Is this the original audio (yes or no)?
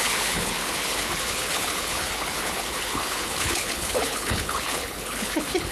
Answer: no